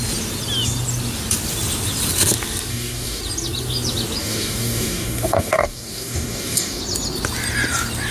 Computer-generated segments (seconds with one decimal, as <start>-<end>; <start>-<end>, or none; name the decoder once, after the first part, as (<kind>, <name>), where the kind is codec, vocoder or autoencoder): 2.7-3.2 (codec, DAC); 4.2-6.8